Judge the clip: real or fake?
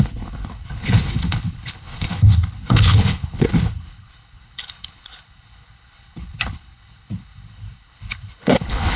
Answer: fake